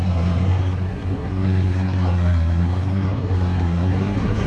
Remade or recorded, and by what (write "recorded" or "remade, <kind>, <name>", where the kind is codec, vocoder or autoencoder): remade, codec, SNAC